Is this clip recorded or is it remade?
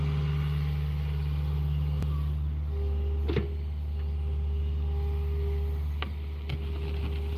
recorded